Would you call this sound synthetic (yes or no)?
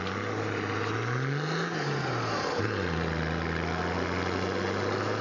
no